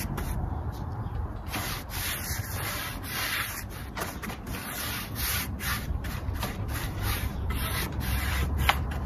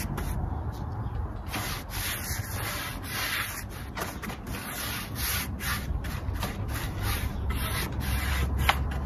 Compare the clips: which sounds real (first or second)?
second